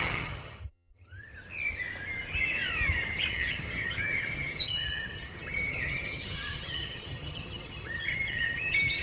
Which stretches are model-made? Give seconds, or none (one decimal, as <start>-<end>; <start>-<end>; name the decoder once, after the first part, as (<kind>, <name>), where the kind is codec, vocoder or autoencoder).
0.0-1.3 (vocoder, HiFi-GAN); 3.3-9.0